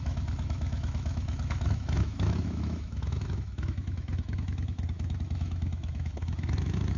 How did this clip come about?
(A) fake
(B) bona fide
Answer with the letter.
A